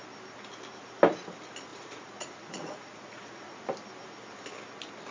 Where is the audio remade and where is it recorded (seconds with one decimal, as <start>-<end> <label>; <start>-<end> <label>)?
0.0-1.7 recorded; 1.7-3.6 remade; 3.6-5.1 recorded